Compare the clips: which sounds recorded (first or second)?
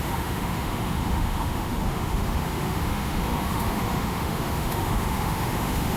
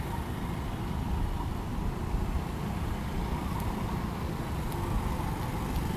second